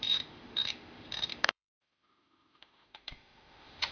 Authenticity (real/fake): fake